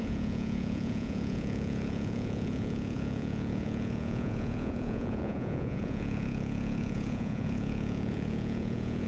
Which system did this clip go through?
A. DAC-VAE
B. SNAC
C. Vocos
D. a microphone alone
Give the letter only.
C